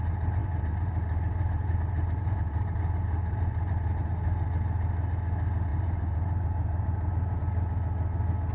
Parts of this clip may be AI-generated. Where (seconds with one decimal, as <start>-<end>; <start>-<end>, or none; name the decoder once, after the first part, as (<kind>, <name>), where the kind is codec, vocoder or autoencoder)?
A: 0.4-4.1 (vocoder, BigVGAN v2); 5.7-7.4